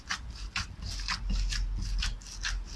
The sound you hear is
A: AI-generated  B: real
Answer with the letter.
B